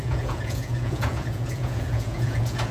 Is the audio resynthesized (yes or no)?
yes